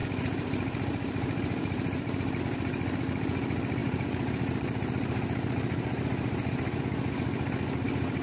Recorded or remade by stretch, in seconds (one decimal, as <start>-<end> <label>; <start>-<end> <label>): 0.0-2.4 remade; 2.4-3.8 recorded; 3.8-6.8 remade; 6.8-8.2 recorded